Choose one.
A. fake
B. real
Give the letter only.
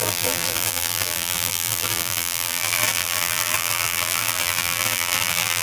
A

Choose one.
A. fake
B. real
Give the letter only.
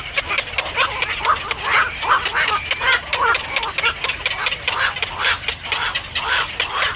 B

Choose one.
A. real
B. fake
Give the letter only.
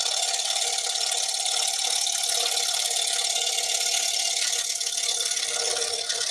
A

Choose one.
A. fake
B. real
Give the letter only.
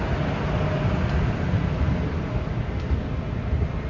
B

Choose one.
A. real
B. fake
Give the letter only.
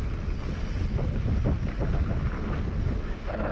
A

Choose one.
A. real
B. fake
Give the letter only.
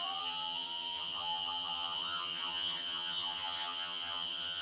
B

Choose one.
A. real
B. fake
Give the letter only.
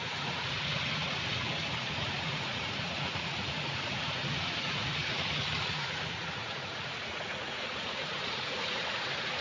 B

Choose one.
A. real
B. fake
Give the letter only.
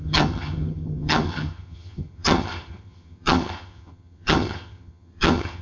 B